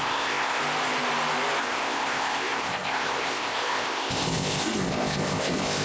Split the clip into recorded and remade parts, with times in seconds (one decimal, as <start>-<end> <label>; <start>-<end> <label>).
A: 0.0-0.6 remade; 0.6-1.6 recorded; 1.6-5.8 remade